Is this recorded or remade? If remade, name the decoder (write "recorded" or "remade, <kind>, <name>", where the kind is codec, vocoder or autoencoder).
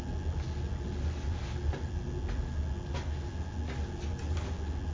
recorded